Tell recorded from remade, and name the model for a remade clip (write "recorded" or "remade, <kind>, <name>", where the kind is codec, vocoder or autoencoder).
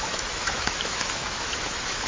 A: remade, autoencoder, DAC-VAE